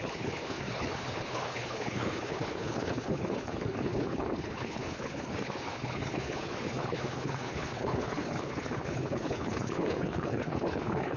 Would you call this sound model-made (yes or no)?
yes